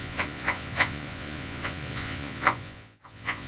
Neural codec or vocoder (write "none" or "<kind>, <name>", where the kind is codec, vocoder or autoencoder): vocoder, Vocos